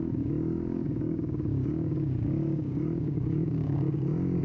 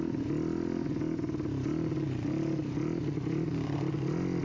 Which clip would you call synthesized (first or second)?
first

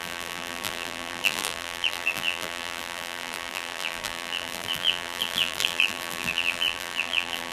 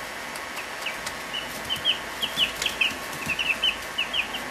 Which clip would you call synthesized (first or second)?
first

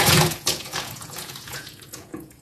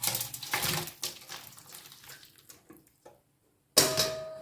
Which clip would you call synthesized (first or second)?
first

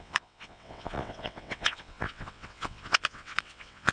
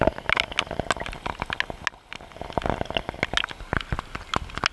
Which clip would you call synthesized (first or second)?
first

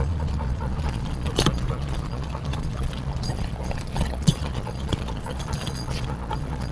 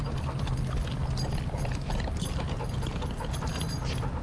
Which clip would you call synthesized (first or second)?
first